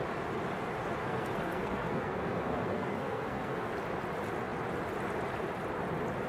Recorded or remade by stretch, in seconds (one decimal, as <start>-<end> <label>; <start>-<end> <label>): 0.0-1.0 recorded; 1.0-3.7 remade; 3.7-6.3 recorded